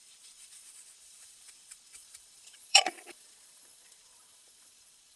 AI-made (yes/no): yes